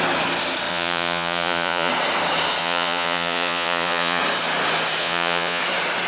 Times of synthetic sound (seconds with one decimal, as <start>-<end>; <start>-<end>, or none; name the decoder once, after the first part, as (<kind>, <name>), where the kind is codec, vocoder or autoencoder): 0.7-1.9 (vocoder, Vocos); 2.6-4.2; 5.0-5.6